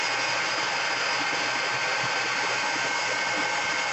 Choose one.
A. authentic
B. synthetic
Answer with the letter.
A